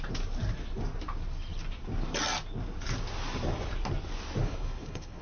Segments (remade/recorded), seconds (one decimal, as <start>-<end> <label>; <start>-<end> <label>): 0.0-4.4 recorded; 4.4-5.2 remade